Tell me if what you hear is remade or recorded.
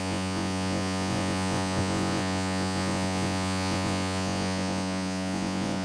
remade